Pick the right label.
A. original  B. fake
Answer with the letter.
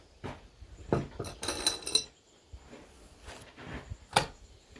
A